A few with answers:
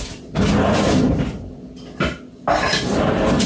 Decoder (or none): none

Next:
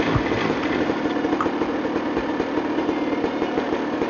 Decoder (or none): none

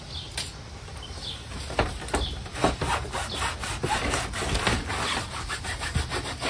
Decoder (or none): none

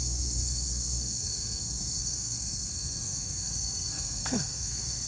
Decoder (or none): codec, SNAC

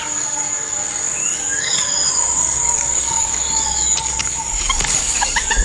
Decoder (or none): codec, DAC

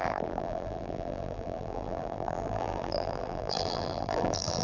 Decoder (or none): vocoder, BigVGAN v2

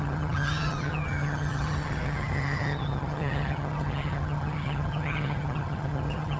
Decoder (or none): vocoder, HiFi-GAN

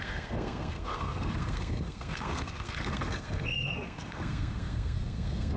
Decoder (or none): codec, SNAC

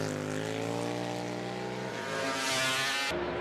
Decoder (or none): none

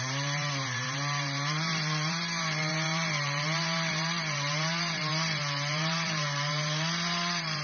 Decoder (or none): vocoder, BigVGAN v2